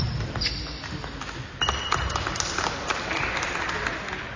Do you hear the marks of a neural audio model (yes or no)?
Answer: no